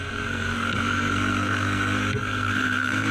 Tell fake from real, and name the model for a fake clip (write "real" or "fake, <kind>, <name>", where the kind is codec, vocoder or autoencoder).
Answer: fake, codec, SNAC